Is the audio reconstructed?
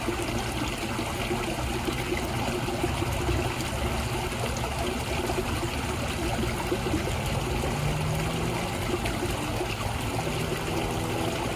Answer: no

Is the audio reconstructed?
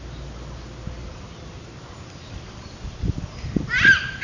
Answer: no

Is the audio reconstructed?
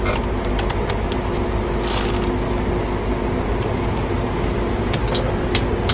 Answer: no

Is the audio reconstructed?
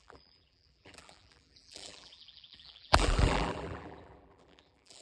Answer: yes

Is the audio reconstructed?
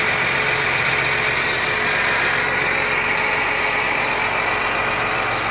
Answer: no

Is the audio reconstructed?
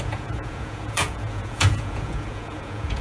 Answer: yes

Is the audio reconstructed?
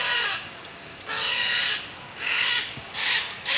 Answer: yes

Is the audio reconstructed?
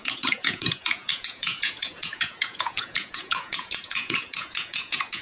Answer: yes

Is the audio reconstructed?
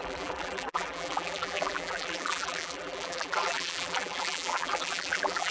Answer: yes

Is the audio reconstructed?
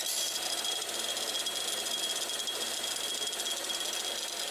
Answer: no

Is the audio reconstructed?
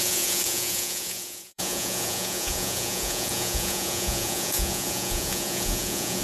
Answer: yes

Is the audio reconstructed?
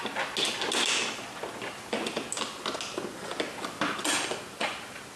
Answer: no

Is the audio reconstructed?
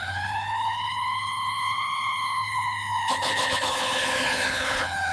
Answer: yes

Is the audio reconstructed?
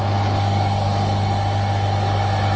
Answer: no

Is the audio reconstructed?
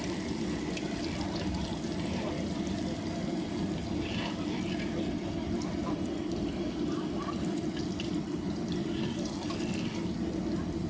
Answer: no